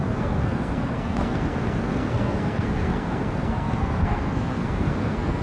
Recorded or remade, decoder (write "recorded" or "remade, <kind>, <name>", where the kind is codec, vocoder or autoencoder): remade, codec, SNAC